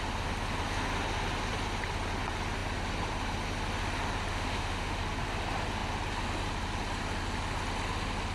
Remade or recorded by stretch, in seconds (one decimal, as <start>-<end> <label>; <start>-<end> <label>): 0.0-4.3 recorded; 4.3-5.0 remade; 5.0-8.3 recorded